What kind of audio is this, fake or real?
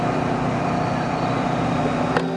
real